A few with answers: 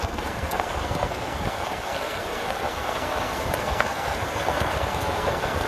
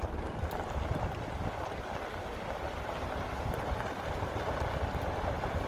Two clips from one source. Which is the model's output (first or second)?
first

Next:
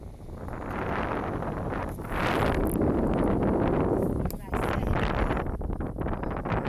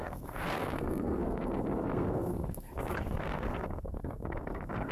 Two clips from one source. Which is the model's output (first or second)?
second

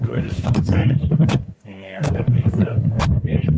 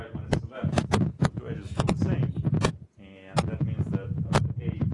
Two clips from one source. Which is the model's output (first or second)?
first